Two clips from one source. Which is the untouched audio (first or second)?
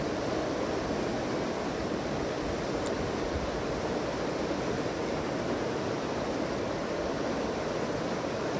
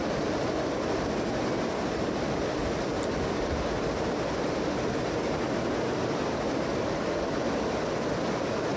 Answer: second